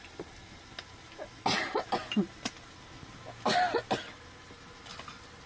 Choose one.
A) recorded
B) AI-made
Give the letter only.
A